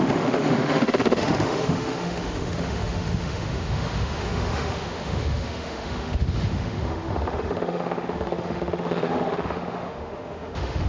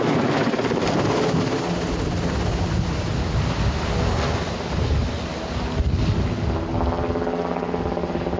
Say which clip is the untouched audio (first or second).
second